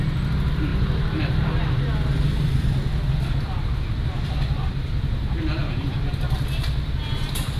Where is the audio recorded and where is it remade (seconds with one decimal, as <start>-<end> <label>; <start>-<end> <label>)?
0.0-7.6 recorded